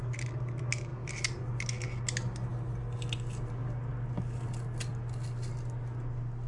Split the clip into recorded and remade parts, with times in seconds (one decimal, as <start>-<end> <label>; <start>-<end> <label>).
0.0-6.5 recorded